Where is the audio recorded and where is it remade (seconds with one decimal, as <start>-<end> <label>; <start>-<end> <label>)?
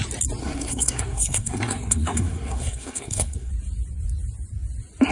0.0-0.4 recorded; 0.4-3.5 remade; 3.5-5.1 recorded